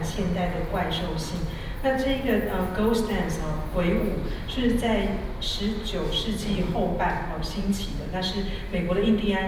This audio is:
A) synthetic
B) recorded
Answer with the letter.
B